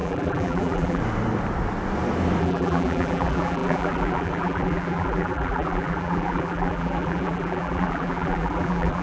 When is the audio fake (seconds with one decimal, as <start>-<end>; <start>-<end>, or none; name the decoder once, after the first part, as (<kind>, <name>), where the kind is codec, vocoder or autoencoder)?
0.0-1.0 (vocoder, BigVGAN v2); 2.4-9.0